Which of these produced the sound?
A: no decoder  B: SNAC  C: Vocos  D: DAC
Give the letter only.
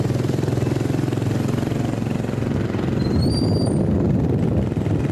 A